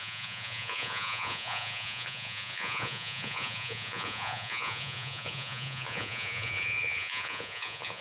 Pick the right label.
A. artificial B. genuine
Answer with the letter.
A